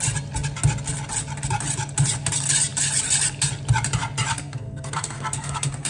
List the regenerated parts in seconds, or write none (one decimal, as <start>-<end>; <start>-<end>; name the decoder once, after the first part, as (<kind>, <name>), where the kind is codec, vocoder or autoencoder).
4.3-5.9 (codec, SNAC)

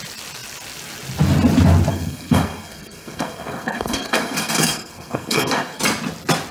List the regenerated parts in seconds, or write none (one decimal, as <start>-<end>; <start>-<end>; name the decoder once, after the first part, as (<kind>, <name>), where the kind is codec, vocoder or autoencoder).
1.9-5.8 (codec, SNAC)

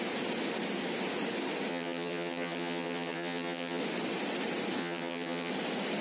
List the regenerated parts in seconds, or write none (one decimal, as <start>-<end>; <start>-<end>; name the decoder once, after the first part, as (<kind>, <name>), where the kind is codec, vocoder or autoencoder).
1.7-3.8 (vocoder, HiFi-GAN); 4.8-5.5

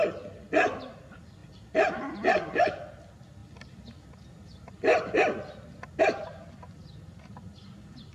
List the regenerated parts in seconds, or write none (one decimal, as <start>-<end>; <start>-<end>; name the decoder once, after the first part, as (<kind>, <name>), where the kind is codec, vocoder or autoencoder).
none

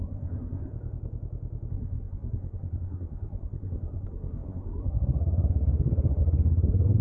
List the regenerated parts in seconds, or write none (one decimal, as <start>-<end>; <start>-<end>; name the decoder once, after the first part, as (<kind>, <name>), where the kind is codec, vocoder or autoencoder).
0.0-0.7 (codec, SNAC); 1.7-7.0

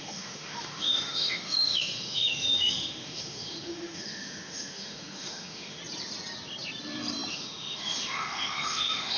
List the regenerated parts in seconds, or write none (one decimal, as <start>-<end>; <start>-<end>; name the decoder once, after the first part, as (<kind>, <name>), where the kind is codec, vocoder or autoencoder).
0.0-5.8 (autoencoder, DAC-VAE); 7.3-9.2

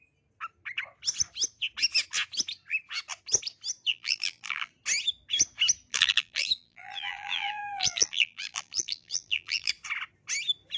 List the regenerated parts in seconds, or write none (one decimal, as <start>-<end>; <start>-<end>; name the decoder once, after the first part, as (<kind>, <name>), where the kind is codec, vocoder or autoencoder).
3.9-4.7 (vocoder, BigVGAN v2); 5.9-9.7

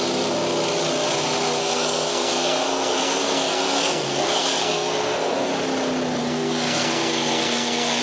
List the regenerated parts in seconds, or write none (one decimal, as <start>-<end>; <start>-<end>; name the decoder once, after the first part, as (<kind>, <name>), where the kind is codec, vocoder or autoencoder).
1.6-5.5 (codec, SNAC); 6.2-8.0